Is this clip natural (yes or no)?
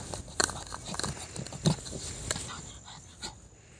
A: yes